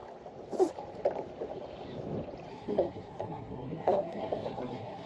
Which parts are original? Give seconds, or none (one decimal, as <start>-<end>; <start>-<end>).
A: 0.0-2.5